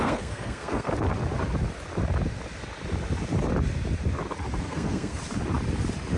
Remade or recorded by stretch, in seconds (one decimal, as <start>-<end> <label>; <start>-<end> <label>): 0.0-0.9 remade; 0.9-4.6 recorded; 4.6-5.2 remade; 5.2-6.2 recorded